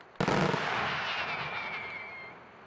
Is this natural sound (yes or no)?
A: yes